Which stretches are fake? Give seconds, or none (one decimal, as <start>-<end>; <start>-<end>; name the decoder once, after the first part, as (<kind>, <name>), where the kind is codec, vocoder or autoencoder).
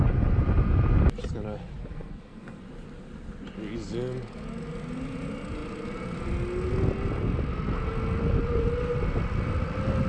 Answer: 1.8-2.6 (codec, SNAC)